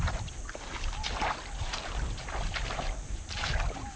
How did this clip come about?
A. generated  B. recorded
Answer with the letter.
B